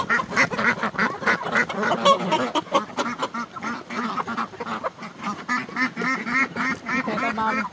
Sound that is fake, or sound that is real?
real